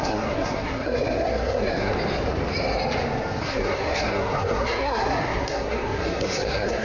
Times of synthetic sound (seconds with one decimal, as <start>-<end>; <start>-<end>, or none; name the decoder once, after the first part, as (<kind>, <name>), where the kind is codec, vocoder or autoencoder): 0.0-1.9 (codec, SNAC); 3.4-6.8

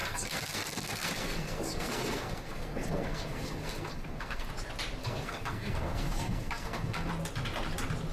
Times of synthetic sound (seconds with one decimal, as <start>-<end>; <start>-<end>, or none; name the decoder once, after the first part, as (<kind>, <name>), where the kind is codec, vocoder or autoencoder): 0.0-4.5 (codec, SNAC); 5.0-7.1

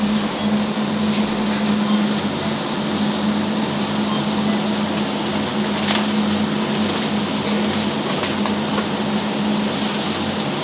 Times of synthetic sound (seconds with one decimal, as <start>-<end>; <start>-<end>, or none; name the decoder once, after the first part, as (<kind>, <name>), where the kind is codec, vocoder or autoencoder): none